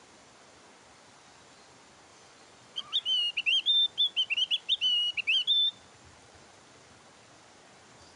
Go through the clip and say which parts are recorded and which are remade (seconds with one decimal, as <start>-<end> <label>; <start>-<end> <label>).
0.0-2.1 recorded; 2.1-2.8 remade; 2.8-8.2 recorded